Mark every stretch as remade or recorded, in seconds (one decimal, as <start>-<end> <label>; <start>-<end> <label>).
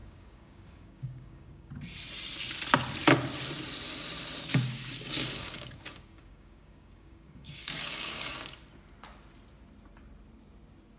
0.0-1.7 remade; 1.7-4.5 recorded; 4.5-8.6 remade; 8.6-11.0 recorded